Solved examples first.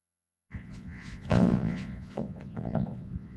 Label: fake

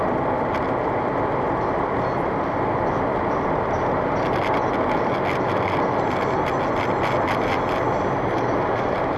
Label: real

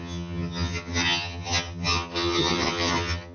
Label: fake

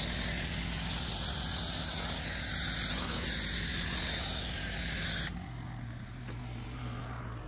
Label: real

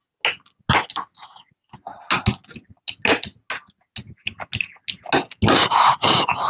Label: real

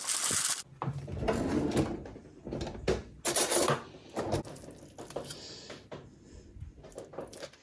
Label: real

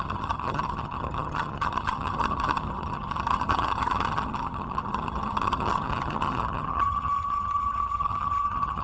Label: fake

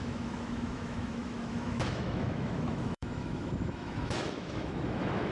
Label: fake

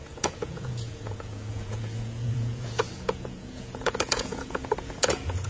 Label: fake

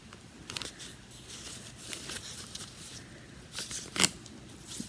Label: fake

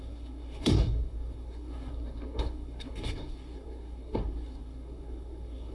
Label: fake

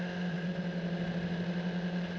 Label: real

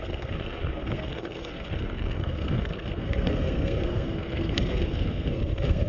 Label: fake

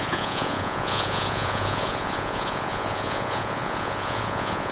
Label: fake